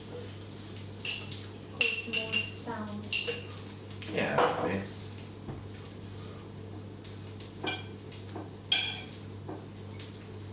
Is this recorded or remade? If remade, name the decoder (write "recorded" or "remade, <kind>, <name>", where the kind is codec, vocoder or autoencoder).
recorded